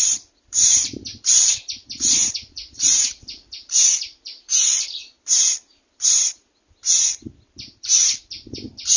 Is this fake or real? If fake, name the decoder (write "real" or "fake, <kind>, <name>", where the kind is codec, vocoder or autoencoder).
fake, vocoder, BigVGAN v2